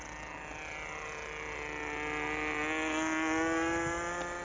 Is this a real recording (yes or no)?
yes